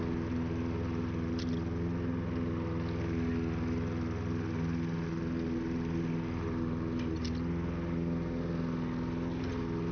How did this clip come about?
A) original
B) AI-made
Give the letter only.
A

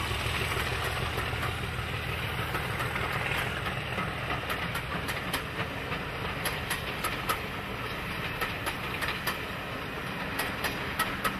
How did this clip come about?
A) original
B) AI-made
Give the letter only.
A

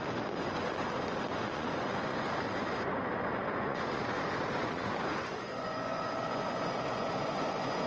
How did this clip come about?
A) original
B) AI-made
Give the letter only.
B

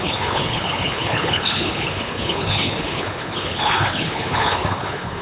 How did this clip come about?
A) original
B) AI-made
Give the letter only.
B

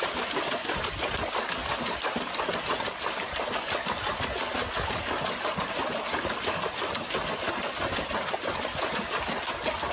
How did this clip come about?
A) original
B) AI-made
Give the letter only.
A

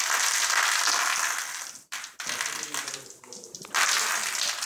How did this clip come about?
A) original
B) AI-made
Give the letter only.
A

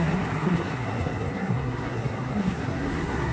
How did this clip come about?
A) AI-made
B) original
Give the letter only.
A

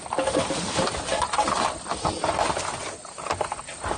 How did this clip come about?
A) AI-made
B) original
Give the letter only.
B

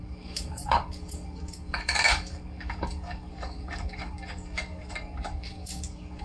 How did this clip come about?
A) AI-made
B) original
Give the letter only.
A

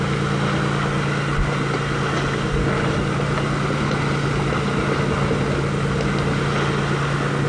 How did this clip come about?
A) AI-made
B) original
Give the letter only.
B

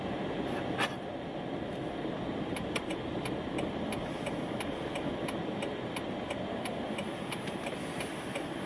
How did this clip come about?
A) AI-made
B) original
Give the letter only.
B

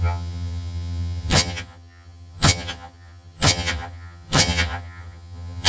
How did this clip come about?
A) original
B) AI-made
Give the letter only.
B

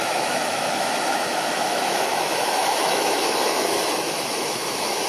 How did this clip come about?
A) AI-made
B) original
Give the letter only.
A